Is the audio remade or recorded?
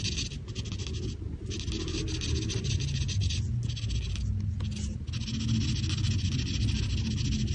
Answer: recorded